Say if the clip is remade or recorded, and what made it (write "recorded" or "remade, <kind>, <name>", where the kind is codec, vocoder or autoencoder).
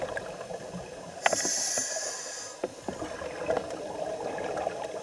recorded